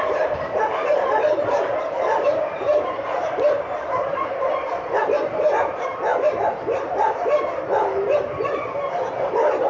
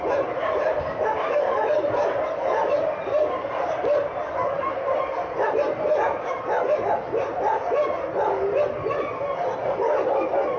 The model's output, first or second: first